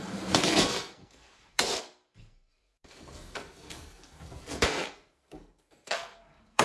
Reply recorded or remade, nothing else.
remade